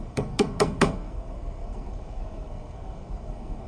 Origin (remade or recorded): remade